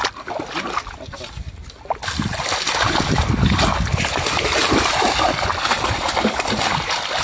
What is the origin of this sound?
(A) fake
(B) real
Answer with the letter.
B